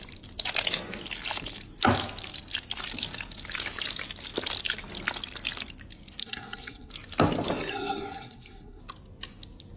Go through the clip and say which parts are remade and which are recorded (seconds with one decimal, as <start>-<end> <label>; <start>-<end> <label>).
0.0-6.2 recorded; 6.2-6.9 remade; 6.9-7.7 recorded; 7.7-8.8 remade; 8.8-9.8 recorded